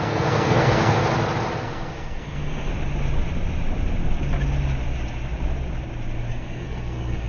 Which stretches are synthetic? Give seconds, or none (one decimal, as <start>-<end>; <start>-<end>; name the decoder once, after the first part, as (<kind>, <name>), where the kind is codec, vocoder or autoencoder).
0.0-1.0 (codec, SNAC); 1.6-2.7; 6.3-7.3